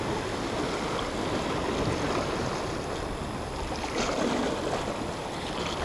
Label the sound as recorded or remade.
recorded